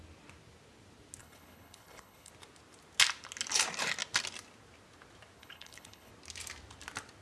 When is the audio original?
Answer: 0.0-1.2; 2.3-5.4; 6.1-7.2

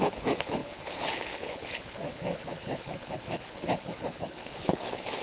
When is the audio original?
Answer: none